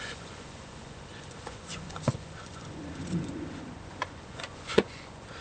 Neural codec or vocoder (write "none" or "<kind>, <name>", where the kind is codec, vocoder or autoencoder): vocoder, Vocos